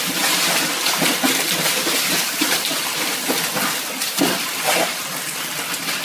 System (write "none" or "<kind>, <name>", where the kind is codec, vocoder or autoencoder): none